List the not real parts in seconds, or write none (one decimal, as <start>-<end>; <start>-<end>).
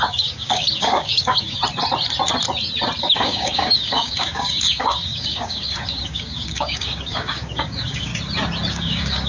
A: 0.0-1.6; 3.0-8.1; 8.7-9.3